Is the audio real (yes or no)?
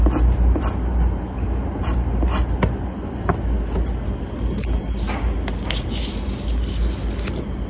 yes